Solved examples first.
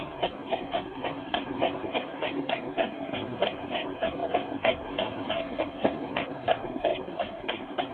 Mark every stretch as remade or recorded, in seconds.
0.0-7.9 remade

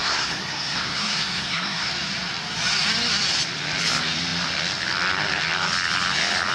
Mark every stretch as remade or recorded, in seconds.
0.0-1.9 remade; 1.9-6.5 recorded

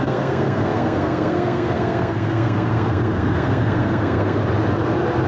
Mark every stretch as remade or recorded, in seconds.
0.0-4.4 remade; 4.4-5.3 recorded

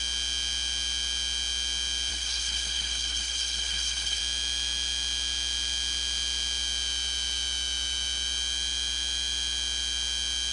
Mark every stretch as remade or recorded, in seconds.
0.0-2.1 recorded; 2.1-4.2 remade; 4.2-10.5 recorded

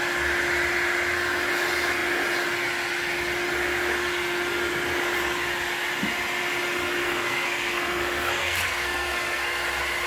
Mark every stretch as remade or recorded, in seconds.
0.0-7.0 recorded; 7.0-9.6 remade; 9.6-10.1 recorded